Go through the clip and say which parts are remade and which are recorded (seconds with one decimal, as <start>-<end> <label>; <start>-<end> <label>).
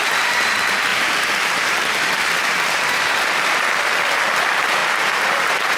0.0-0.9 recorded; 0.9-3.3 remade; 3.3-4.8 recorded; 4.8-5.8 remade